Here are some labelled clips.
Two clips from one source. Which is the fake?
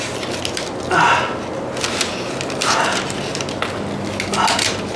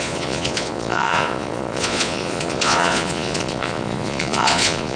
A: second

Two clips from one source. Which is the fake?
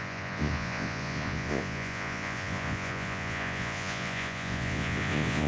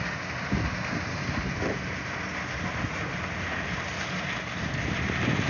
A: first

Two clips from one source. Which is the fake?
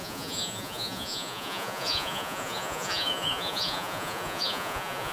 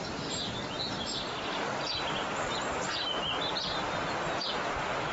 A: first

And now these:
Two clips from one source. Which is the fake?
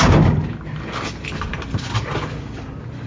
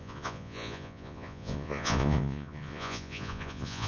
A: second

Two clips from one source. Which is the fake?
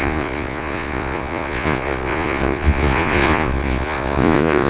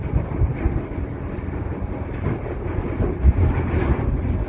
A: first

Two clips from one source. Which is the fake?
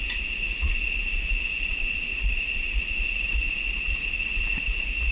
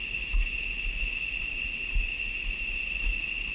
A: first